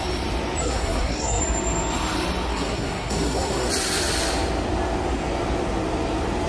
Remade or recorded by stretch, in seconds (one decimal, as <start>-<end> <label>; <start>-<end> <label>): 0.0-0.6 recorded; 0.6-1.4 remade; 1.4-2.5 recorded; 2.5-3.7 remade; 3.7-6.5 recorded